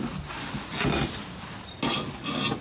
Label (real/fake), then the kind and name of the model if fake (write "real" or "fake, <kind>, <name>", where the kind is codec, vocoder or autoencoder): real